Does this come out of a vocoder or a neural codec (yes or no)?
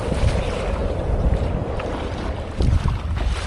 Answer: no